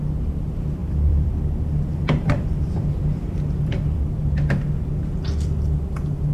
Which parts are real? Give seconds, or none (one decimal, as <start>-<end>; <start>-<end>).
0.0-0.8; 1.3-1.9; 4.0-6.3